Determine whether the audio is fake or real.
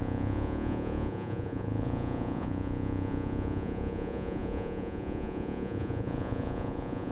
fake